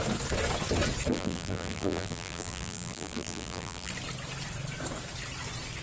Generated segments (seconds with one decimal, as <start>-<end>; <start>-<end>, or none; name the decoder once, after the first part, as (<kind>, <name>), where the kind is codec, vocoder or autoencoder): 1.1-3.9 (vocoder, BigVGAN v2)